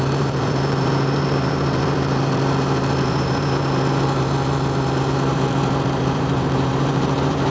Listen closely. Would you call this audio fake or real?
fake